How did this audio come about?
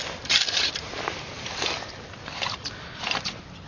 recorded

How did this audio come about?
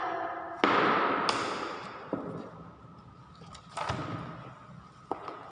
recorded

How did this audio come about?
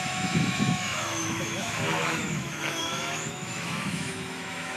remade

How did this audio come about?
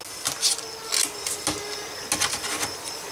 recorded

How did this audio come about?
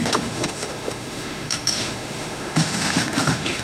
remade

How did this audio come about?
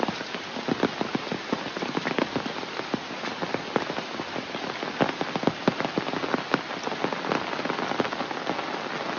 recorded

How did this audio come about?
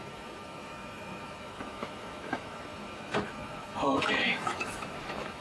remade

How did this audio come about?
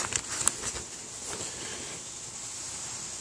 recorded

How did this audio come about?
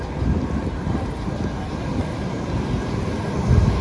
recorded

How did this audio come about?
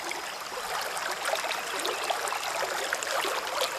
recorded